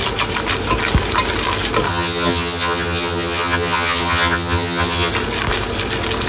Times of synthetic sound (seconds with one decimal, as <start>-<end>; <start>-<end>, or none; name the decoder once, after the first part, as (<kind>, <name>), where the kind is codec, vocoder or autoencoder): 1.9-5.1 (vocoder, HiFi-GAN)